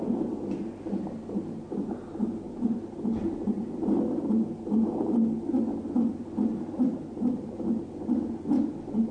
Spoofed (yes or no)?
no